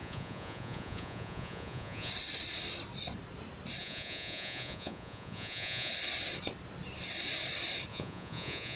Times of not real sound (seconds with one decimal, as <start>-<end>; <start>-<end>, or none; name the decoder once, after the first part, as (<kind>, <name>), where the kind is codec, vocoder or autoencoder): 0.0-2.1 (vocoder, Vocos); 3.8-5.9; 7.9-8.8